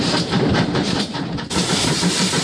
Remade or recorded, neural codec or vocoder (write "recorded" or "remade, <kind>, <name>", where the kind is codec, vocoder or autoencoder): remade, vocoder, BigVGAN v2